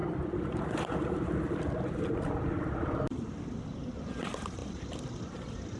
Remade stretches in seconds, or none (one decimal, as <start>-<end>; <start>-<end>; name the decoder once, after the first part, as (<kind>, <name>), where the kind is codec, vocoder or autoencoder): none